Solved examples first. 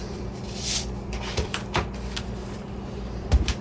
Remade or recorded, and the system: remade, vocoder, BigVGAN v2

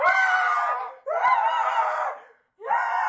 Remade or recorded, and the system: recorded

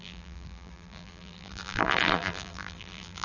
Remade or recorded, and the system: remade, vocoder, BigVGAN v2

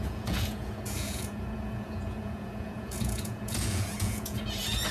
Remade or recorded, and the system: remade, vocoder, Vocos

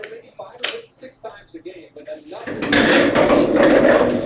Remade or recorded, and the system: recorded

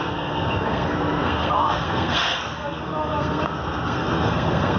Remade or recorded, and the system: remade, codec, SNAC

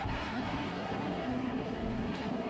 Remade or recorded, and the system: remade, codec, SNAC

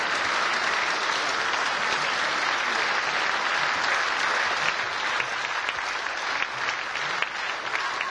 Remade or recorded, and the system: recorded